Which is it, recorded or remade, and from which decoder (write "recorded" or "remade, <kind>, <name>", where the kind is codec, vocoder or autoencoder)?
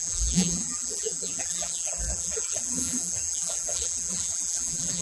remade, vocoder, BigVGAN v2